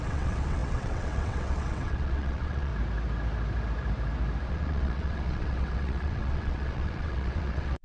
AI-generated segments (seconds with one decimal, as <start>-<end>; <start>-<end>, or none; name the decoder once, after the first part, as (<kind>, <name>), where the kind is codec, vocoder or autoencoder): 0.0-2.7 (vocoder, WaveNeXt); 4.5-7.8